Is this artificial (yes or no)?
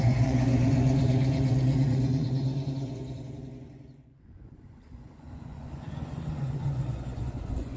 yes